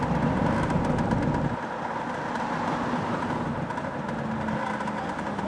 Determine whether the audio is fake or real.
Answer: real